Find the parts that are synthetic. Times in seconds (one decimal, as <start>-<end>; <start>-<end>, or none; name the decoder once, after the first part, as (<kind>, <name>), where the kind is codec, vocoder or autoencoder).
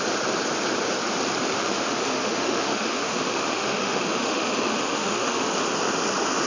1.6-5.5 (autoencoder, DAC-VAE)